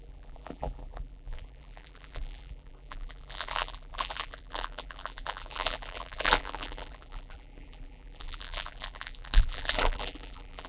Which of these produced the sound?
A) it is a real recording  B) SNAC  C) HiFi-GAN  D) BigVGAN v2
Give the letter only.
D